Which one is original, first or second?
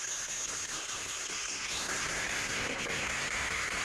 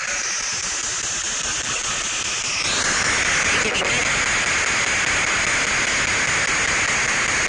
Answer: second